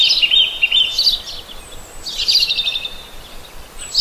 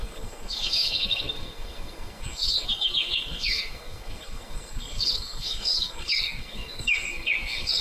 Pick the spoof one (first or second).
second